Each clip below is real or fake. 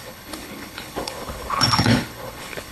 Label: fake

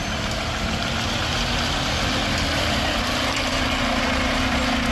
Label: real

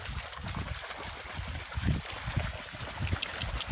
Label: real